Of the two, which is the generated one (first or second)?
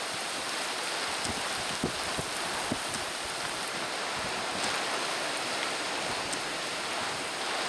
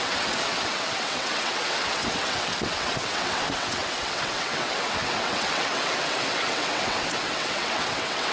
second